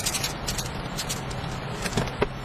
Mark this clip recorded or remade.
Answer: recorded